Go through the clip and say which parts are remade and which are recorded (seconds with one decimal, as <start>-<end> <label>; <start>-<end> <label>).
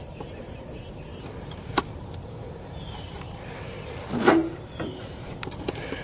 0.0-4.4 remade; 4.4-5.0 recorded; 5.0-6.0 remade